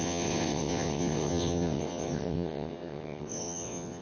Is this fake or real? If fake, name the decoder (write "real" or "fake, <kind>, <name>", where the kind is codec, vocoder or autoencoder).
fake, vocoder, WaveNeXt